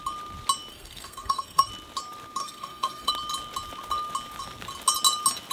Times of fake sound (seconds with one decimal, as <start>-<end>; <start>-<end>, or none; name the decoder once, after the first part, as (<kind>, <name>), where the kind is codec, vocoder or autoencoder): 0.7-1.7 (codec, SNAC); 2.4-3.1

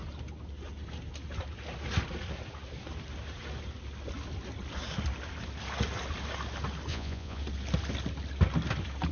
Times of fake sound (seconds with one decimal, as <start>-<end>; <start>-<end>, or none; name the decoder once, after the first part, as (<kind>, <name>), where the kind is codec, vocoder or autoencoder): 6.9-7.4 (vocoder, Vocos)

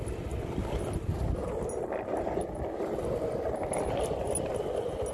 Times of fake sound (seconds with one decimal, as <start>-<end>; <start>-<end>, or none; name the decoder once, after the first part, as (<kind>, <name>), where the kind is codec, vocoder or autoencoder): none

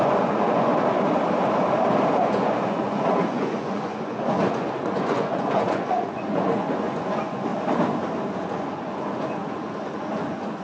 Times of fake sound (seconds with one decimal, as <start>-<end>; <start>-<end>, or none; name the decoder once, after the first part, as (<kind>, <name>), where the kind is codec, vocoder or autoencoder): 0.0-0.7 (vocoder, Vocos); 2.2-7.5; 8.3-10.6

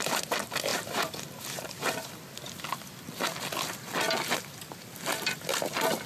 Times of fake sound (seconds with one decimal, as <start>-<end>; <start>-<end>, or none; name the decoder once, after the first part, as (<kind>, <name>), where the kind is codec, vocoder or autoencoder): 0.7-1.6 (vocoder, BigVGAN v2)

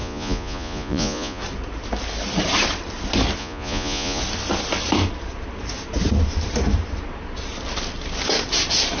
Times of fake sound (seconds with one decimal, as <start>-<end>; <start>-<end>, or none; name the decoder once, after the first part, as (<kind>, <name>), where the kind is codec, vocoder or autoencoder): 0.0-1.4 (vocoder, Vocos); 3.4-4.2